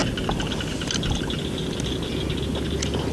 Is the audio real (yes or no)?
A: yes